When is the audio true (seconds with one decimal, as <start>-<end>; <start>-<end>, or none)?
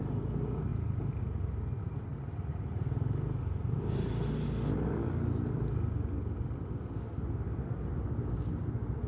0.0-9.1